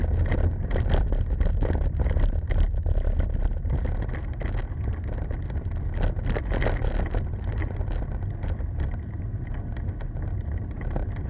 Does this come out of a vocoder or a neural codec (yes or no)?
no